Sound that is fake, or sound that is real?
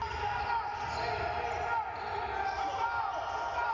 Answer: real